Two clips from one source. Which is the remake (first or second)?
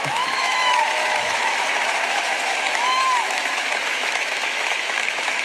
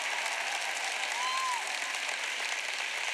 first